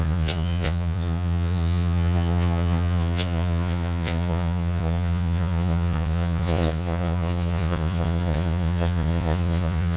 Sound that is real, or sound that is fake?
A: fake